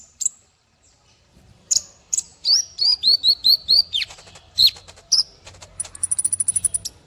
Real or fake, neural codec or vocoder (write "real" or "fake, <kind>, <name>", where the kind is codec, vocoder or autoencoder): fake, vocoder, BigVGAN v2